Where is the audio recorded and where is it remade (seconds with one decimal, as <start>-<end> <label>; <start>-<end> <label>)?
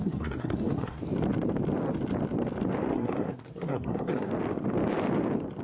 0.0-1.0 remade; 1.0-2.9 recorded; 2.9-4.3 remade; 4.3-5.6 recorded